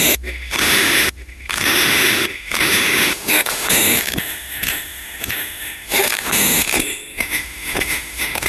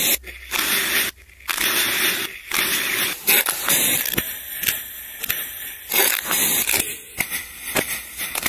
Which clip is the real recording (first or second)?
second